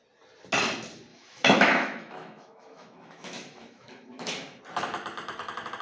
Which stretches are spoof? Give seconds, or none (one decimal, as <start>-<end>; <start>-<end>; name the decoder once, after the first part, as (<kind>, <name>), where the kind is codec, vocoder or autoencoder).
1.1-4.6 (autoencoder, DAC-VAE)